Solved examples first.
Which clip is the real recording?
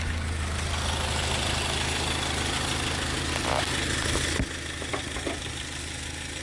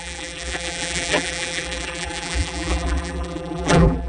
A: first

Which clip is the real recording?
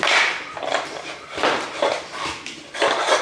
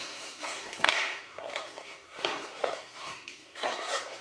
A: first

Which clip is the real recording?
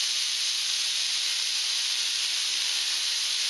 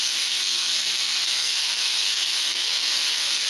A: first